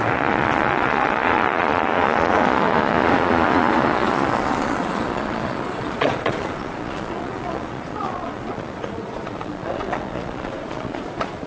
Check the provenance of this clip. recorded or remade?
remade